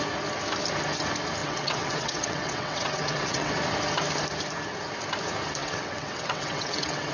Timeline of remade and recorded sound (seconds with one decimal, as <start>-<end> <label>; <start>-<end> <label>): 0.0-1.4 recorded; 1.4-3.5 remade; 3.5-5.6 recorded; 5.6-7.1 remade